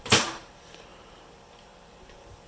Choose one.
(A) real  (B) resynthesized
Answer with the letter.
B